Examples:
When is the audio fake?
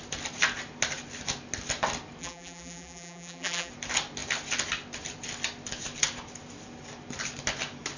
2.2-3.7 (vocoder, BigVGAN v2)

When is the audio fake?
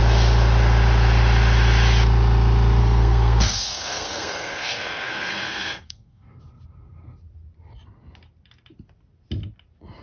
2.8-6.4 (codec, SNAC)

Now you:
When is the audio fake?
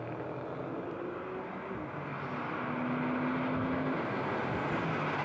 0.7-1.5 (vocoder, BigVGAN v2)